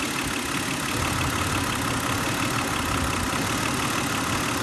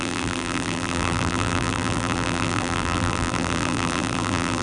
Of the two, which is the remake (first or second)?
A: second